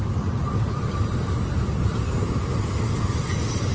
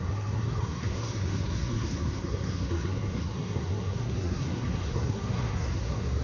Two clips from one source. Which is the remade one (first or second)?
second